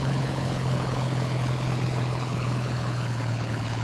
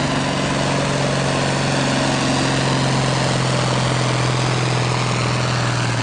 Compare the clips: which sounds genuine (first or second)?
second